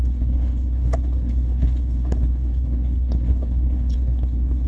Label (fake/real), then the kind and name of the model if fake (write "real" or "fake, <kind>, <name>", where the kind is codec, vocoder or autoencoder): fake, codec, HILCodec